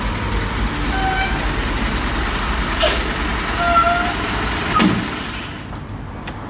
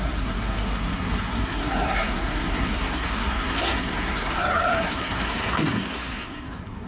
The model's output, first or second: second